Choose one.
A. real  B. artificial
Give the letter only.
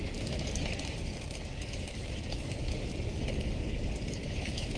B